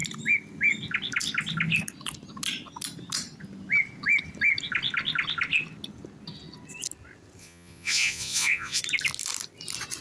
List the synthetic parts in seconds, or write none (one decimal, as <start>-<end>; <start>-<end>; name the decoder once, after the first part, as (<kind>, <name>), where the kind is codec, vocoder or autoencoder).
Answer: 7.4-8.8 (vocoder, Vocos)